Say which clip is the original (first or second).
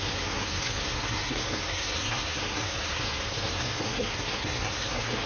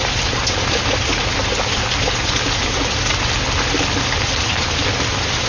second